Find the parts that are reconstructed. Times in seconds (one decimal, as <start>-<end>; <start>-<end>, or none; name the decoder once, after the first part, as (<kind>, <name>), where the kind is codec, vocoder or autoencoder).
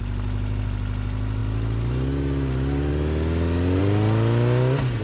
none